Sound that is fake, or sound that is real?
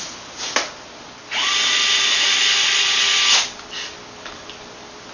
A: real